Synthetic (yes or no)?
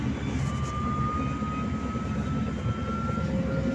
no